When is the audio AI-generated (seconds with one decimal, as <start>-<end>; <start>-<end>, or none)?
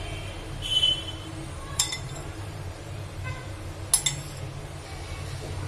0.7-3.9